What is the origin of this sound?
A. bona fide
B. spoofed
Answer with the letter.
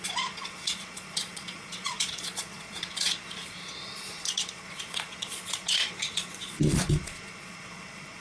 B